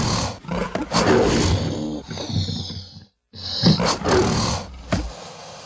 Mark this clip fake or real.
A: real